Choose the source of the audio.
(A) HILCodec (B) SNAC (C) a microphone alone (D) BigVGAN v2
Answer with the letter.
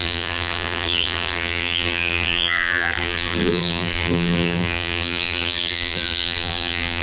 D